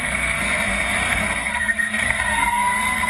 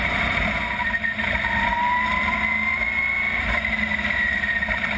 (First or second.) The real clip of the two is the second